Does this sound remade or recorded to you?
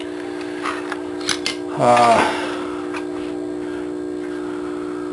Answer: recorded